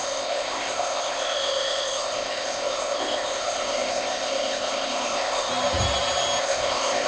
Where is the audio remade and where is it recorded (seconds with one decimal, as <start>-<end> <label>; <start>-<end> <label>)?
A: 0.0-5.5 remade; 5.5-6.4 recorded; 6.4-7.1 remade